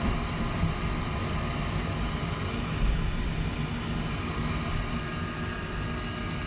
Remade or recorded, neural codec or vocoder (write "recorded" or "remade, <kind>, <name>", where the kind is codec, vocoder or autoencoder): recorded